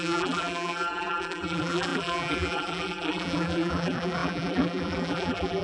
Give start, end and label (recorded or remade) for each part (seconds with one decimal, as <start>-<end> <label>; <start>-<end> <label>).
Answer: 0.0-5.6 remade